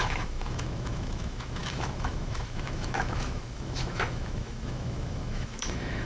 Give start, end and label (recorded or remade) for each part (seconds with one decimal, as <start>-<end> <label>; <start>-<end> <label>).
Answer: 0.0-6.1 remade